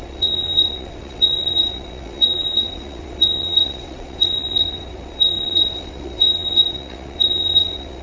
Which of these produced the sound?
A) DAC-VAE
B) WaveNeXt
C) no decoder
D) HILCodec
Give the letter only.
B